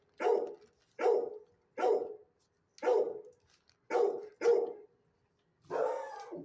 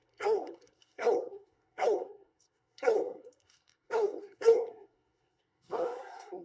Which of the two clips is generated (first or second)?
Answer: second